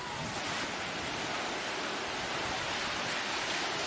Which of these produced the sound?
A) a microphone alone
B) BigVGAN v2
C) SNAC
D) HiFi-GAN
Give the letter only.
A